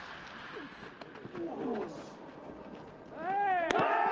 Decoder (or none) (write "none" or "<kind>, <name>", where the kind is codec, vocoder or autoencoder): none